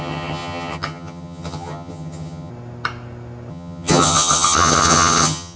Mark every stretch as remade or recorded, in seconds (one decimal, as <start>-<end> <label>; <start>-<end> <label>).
0.0-2.5 remade; 2.5-3.5 recorded; 3.5-5.6 remade